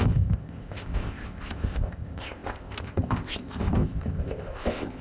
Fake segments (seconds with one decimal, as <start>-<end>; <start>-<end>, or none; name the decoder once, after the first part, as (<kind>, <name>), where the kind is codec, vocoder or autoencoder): 0.0-5.0 (codec, ZipCodec)